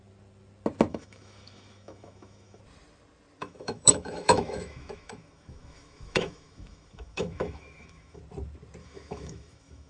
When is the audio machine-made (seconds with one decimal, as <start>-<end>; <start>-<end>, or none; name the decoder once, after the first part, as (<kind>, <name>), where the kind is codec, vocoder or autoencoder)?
0.9-2.6 (autoencoder, DAC-VAE); 3.4-8.2; 8.8-9.9